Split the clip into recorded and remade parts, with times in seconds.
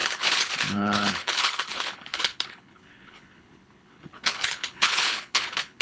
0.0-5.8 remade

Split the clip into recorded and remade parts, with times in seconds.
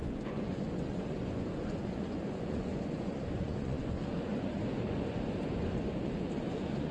0.0-6.9 remade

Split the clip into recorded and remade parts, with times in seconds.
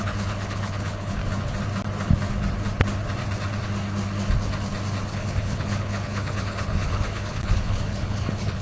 0.0-1.2 remade; 1.2-5.1 recorded; 5.1-8.6 remade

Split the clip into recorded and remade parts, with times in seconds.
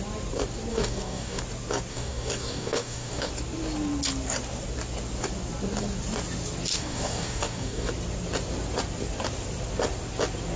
0.0-0.7 recorded; 0.7-1.4 remade; 1.4-1.9 recorded; 1.9-3.3 remade; 3.3-6.7 recorded; 6.7-7.9 remade; 7.9-10.6 recorded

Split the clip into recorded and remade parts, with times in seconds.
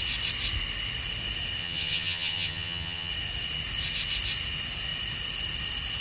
0.0-1.6 recorded; 1.6-3.1 remade; 3.1-6.0 recorded